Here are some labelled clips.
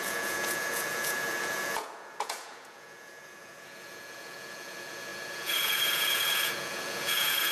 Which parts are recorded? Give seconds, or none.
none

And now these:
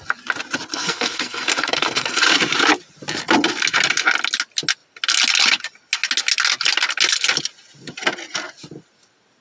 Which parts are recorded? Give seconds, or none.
0.0-0.7; 2.2-9.4

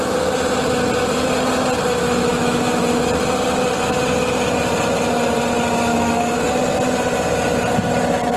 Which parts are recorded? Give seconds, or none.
0.0-2.3; 2.8-5.9; 6.5-8.4

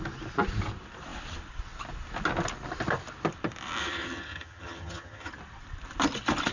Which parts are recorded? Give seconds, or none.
0.0-3.8; 5.3-6.5

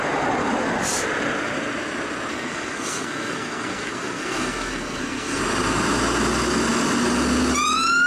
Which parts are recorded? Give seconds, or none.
0.0-2.3; 5.4-8.1

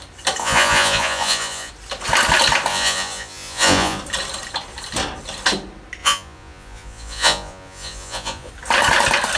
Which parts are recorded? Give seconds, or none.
0.0-0.4; 1.7-2.7; 4.0-6.0; 8.5-9.4

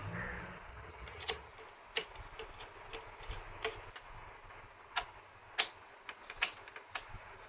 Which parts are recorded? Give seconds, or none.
0.0-0.7; 1.5-7.5